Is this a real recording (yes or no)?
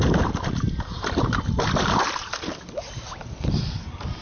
yes